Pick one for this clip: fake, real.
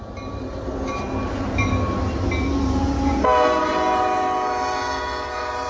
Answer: real